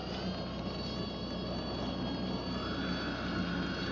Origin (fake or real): real